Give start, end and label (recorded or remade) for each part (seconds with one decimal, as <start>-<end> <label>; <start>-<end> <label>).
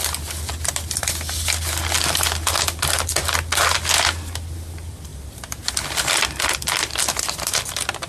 0.0-8.1 recorded